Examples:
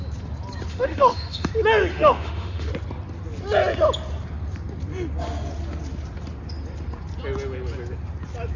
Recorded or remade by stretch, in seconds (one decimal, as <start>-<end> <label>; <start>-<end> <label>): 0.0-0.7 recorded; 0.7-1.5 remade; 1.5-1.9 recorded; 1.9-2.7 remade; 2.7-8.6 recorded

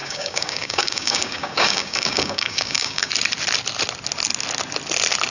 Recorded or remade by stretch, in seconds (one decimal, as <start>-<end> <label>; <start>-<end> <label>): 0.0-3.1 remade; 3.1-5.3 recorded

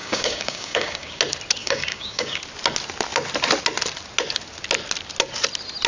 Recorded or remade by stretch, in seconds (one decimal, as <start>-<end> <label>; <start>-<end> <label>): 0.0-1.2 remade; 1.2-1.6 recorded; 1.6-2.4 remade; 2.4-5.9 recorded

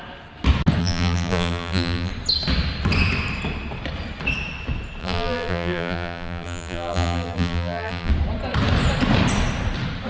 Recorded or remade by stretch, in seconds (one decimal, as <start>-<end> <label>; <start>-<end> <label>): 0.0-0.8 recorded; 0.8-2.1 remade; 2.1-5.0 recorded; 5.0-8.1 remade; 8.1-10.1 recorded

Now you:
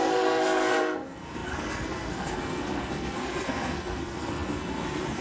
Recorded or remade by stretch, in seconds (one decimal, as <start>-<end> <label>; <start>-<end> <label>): 0.0-5.2 remade

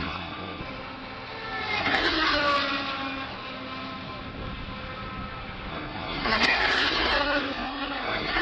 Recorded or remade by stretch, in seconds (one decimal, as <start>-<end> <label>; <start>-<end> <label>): 0.0-0.6 remade; 0.6-1.8 recorded; 1.8-2.4 remade; 2.4-5.7 recorded; 5.7-8.4 remade